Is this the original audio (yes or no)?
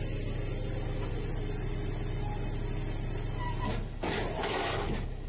yes